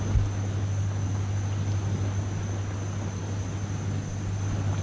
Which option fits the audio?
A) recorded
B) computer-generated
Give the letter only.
A